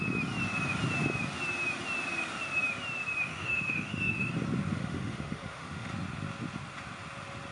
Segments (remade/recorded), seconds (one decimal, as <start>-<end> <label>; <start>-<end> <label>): 0.0-3.3 recorded; 3.3-4.3 remade; 4.3-4.7 recorded; 4.7-5.9 remade; 5.9-7.5 recorded